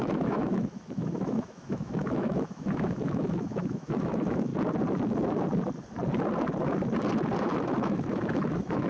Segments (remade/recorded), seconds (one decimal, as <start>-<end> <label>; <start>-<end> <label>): 0.0-4.5 remade; 4.5-7.4 recorded; 7.4-8.9 remade

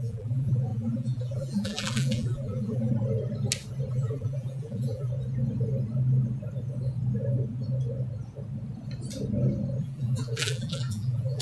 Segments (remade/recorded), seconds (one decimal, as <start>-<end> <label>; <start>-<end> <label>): 0.0-2.9 remade; 2.9-3.9 recorded; 3.9-5.1 remade; 5.1-9.8 recorded; 9.8-11.4 remade

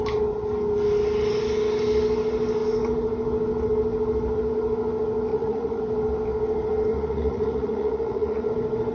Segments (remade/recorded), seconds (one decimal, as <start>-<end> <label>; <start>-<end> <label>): 0.0-5.3 recorded; 5.3-5.8 remade; 5.8-6.9 recorded; 6.9-8.5 remade; 8.5-8.9 recorded

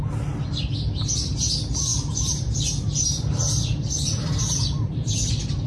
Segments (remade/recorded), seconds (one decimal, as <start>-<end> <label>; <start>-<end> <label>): 0.0-1.9 recorded; 1.9-5.3 remade; 5.3-5.7 recorded

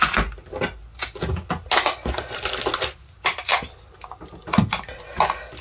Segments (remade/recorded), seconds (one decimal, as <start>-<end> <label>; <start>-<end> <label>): 0.0-5.6 recorded

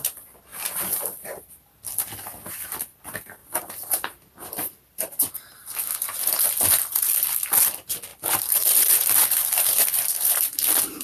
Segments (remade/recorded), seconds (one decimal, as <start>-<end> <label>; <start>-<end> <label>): 0.0-0.5 recorded; 0.5-1.2 remade; 1.2-8.1 recorded; 8.1-10.3 remade; 10.3-11.0 recorded

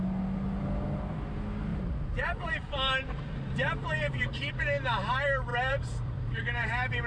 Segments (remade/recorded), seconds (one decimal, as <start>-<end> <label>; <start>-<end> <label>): 0.0-1.7 recorded; 1.7-4.5 remade; 4.5-5.5 recorded; 5.5-7.1 remade

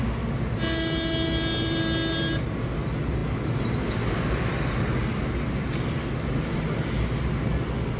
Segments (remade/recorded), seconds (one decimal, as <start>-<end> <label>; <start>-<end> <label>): 0.0-8.0 recorded